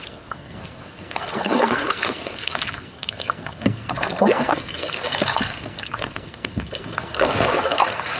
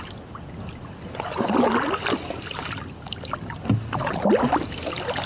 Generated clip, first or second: first